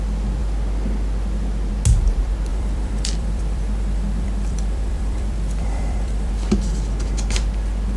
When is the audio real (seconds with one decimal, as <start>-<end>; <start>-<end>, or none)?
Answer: 0.0-2.5; 6.3-8.0